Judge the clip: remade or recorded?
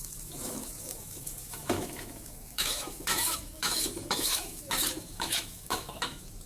remade